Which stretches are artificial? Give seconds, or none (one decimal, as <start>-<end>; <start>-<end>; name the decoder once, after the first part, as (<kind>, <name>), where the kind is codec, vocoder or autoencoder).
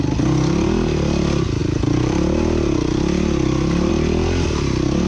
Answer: 1.6-3.9 (vocoder, BigVGAN v2)